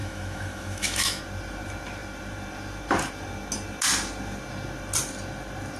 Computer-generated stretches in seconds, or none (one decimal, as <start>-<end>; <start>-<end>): 0.0-1.2